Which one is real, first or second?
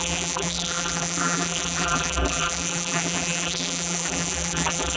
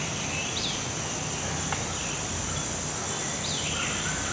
second